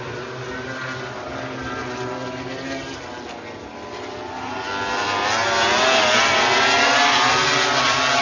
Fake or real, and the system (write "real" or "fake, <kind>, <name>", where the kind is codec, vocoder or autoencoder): real